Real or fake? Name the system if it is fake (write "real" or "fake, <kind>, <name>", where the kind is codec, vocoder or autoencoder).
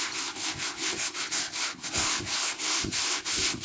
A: fake, codec, ZipCodec